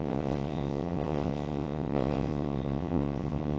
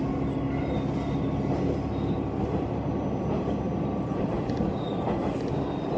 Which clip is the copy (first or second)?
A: first